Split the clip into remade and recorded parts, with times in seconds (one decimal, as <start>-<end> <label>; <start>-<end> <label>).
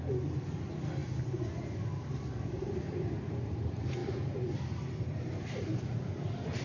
0.0-1.0 remade; 1.0-2.5 recorded; 2.5-6.6 remade